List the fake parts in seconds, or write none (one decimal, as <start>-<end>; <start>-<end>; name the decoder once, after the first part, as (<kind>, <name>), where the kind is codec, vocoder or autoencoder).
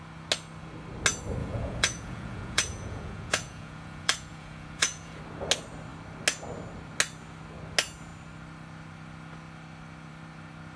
1.4-5.2 (vocoder, Vocos)